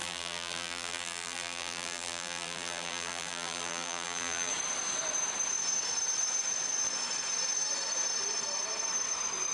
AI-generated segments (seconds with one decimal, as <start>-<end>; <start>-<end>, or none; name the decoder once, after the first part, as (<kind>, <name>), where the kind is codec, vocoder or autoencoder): 0.0-4.5 (vocoder, BigVGAN v2)